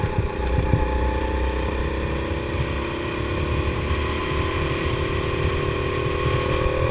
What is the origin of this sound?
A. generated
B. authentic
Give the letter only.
B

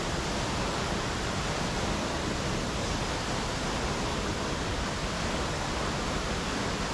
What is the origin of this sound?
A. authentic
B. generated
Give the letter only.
A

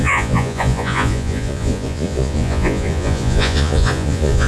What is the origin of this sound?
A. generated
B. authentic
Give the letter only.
A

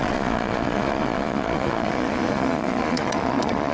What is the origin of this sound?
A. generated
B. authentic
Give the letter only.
A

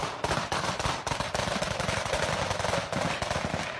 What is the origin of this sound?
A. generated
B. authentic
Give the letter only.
B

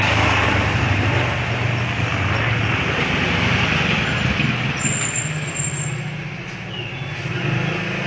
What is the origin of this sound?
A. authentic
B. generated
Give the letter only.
A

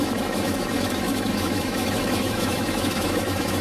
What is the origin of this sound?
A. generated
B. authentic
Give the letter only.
A